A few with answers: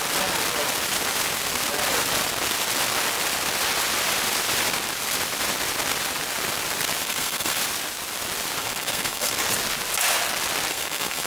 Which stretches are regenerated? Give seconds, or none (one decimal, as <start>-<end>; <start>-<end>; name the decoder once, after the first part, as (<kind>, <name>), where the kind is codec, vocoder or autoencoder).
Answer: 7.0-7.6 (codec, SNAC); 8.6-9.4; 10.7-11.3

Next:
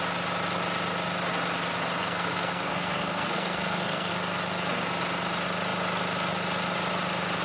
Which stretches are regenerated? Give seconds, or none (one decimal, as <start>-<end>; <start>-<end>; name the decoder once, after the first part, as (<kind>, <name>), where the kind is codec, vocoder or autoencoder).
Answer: 2.0-4.1 (codec, SNAC)

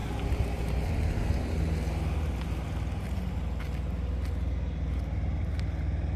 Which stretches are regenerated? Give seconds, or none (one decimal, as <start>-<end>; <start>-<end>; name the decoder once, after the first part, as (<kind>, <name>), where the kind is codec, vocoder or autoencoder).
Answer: none

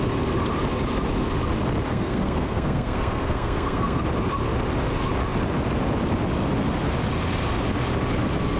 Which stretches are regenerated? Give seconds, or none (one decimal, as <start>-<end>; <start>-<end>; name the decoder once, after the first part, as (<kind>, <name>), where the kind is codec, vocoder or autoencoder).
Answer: 1.9-4.0 (codec, SNAC)

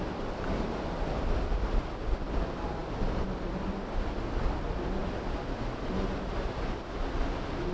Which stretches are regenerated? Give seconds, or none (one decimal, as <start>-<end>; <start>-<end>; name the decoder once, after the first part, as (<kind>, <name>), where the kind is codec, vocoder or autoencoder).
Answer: none

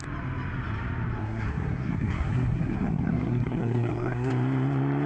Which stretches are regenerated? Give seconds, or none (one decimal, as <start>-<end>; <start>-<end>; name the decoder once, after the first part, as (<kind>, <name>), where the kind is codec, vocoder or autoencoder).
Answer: 1.2-4.3 (codec, SNAC)

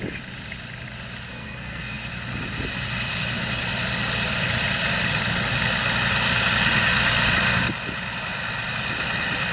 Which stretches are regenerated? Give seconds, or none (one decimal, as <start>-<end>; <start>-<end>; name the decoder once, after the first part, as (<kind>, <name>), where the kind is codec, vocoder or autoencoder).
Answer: 1.3-2.1 (codec, SNAC)

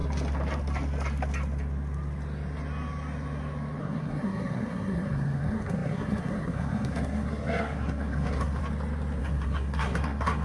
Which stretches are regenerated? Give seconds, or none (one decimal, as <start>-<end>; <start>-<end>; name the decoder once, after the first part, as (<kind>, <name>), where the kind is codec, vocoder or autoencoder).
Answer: 3.8-8.6 (codec, SNAC); 9.2-10.4